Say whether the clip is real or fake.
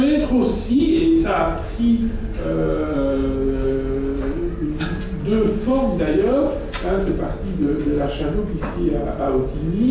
real